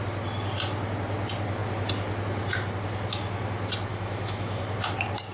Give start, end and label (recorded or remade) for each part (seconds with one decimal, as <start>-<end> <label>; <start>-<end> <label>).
0.0-3.9 recorded; 3.9-4.6 remade; 4.6-5.3 recorded